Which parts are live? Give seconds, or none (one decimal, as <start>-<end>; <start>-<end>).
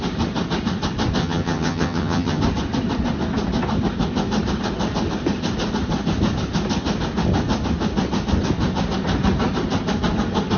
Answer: 0.0-1.2; 2.4-10.6